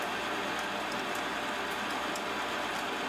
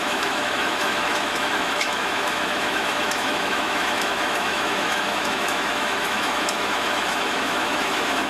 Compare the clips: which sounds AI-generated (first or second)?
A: second